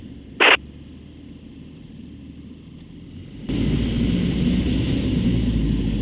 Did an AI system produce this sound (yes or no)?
no